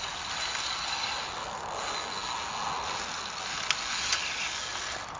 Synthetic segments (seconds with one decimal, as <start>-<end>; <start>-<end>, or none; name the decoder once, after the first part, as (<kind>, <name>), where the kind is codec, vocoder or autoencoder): none